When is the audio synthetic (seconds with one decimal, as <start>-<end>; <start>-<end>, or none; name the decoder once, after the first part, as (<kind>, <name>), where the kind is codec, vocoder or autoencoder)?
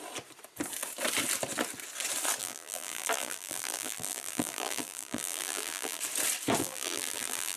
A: 2.4-6.0 (vocoder, BigVGAN v2); 6.6-7.6